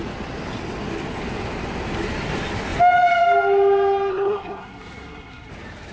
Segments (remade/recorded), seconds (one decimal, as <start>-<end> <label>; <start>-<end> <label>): 0.0-4.1 recorded; 4.1-5.5 remade; 5.5-5.9 recorded